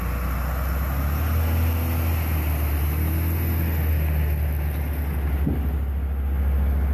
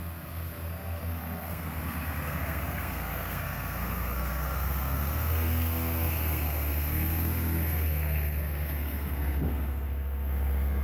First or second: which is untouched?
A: first